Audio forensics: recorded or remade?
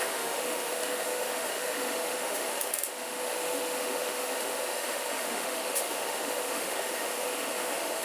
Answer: remade